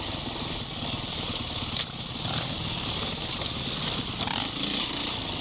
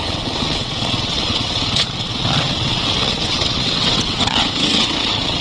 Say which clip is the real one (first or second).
first